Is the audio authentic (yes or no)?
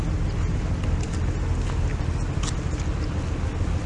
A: yes